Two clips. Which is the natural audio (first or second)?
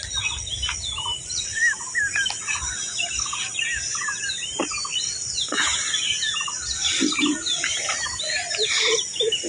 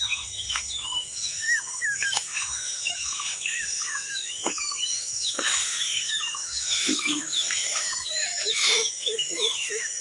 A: first